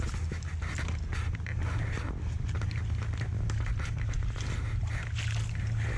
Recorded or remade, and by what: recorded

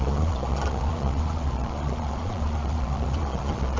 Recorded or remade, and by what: remade, vocoder, Vocos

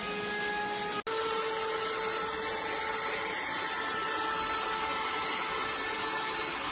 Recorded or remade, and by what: recorded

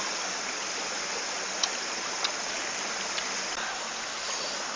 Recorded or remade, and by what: recorded